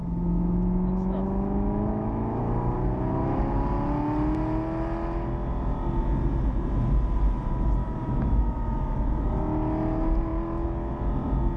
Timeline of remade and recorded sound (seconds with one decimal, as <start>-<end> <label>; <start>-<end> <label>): 0.0-2.4 remade; 2.4-7.8 recorded; 7.8-9.3 remade; 9.3-11.6 recorded